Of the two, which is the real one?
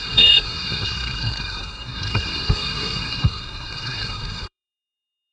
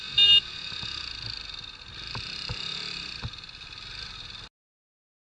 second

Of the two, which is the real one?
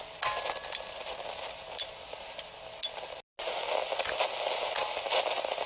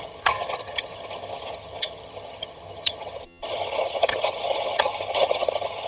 first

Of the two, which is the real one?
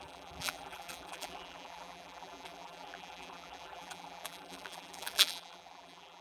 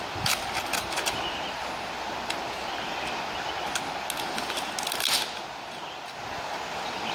second